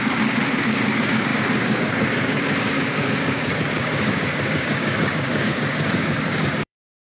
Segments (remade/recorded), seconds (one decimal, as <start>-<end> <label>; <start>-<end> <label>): 0.0-7.0 remade